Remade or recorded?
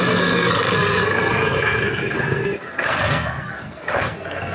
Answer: remade